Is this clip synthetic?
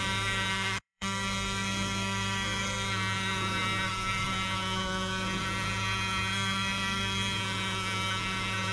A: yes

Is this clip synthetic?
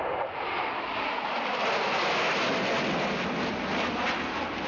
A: no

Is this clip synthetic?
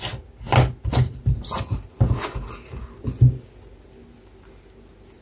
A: no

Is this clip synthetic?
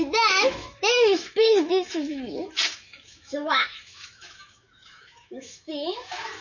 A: yes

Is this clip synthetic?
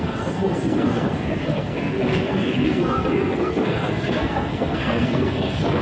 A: yes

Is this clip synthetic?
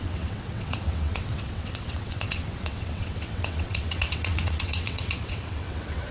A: yes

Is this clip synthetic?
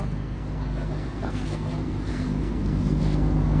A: yes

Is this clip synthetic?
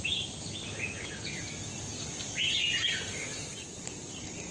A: no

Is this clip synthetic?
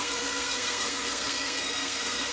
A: yes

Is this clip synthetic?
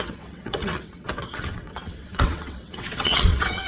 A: yes